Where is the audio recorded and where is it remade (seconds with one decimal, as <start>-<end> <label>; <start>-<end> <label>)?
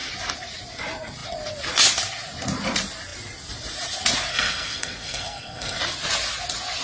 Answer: 0.0-4.3 recorded; 4.3-5.8 remade; 5.8-6.8 recorded